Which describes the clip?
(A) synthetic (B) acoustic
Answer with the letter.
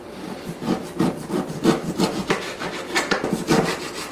A